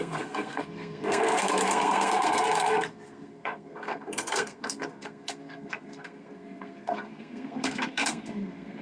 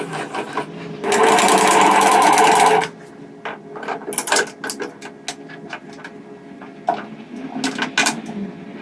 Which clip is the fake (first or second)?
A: first